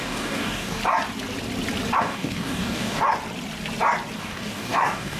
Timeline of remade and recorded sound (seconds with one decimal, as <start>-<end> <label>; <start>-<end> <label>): 0.0-0.8 remade; 0.8-2.0 recorded; 2.0-3.0 remade; 3.0-4.2 recorded; 4.2-5.2 remade